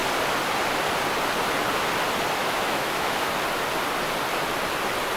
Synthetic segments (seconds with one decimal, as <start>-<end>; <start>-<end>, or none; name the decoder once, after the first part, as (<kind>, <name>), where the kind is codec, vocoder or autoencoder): 2.4-3.3 (autoencoder, DAC-VAE)